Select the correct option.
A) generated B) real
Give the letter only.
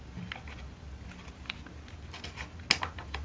B